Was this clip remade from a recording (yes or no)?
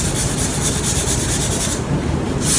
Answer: no